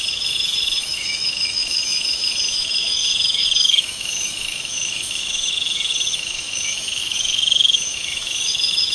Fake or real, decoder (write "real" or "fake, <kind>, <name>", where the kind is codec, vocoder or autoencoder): fake, autoencoder, DAC-VAE